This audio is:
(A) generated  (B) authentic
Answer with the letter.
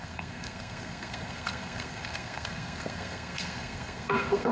A